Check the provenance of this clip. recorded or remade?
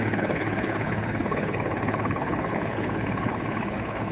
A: remade